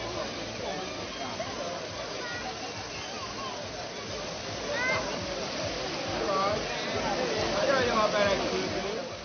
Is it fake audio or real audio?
real